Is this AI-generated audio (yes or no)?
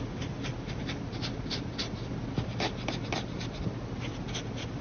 no